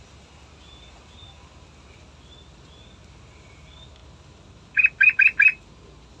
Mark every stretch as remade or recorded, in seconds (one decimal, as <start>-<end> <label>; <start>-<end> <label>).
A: 0.0-6.2 recorded

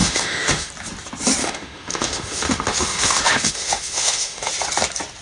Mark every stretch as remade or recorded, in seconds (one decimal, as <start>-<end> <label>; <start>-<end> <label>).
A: 0.0-0.7 remade; 0.7-1.4 recorded; 1.4-4.5 remade; 4.5-5.2 recorded

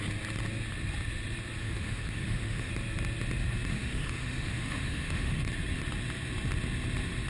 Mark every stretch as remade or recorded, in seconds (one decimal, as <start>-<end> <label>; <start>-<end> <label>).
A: 0.0-1.6 recorded; 1.6-2.7 remade; 2.7-3.7 recorded; 3.7-5.4 remade; 5.4-7.3 recorded

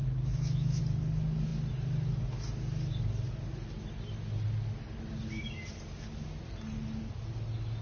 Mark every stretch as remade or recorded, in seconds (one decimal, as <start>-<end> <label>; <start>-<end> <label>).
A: 0.0-0.8 remade; 0.8-7.8 recorded